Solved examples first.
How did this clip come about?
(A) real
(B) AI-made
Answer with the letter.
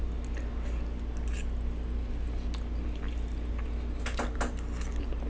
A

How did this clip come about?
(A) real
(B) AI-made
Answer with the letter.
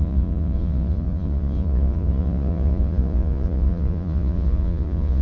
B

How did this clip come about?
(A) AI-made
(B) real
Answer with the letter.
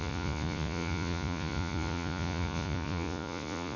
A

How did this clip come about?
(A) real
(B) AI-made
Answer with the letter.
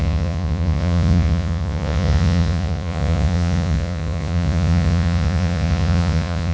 B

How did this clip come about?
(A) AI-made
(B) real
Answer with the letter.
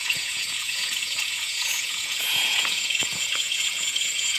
A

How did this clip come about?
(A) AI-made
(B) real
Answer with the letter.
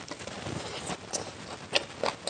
B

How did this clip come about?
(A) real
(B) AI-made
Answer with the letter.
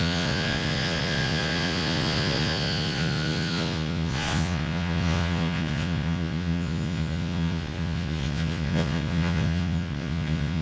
B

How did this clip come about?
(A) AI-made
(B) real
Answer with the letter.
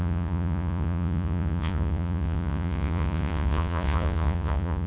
A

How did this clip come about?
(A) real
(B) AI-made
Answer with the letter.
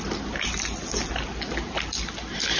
A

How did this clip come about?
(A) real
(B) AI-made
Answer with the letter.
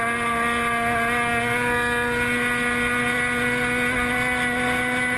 A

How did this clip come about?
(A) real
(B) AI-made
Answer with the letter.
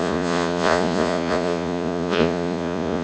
B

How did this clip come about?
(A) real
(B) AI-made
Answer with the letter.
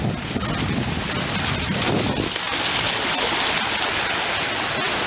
A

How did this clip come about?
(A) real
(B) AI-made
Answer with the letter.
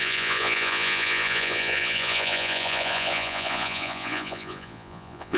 B